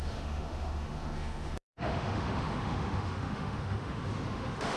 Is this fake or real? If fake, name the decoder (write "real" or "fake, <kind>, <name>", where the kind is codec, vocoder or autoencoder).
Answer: fake, autoencoder, DAC-VAE